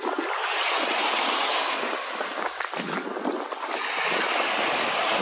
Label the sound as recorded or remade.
recorded